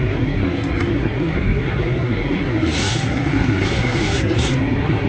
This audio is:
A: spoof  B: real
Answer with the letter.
A